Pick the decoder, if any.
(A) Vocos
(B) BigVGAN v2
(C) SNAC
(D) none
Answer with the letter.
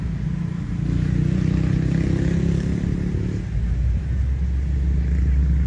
D